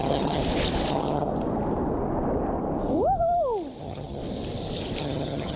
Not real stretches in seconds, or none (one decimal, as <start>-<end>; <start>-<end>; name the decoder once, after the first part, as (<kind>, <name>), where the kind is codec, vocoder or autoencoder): 0.0-0.4 (vocoder, HiFi-GAN); 0.9-1.3; 3.8-4.2; 5.0-5.6